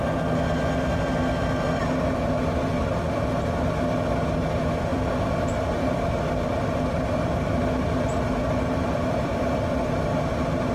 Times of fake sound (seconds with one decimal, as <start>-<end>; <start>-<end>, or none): 4.9-9.8